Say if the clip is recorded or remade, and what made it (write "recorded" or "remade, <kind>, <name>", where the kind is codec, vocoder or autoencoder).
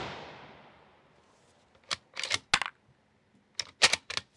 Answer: recorded